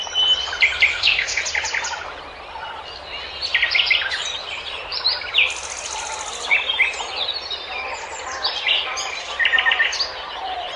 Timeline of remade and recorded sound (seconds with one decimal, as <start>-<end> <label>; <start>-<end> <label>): 0.0-0.9 recorded; 0.9-1.4 remade; 1.4-10.8 recorded